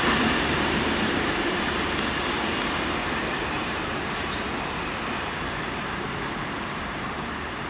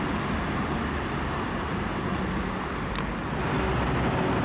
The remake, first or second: first